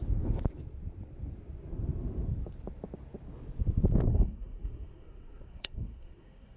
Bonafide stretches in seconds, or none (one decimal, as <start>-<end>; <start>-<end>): 0.0-4.1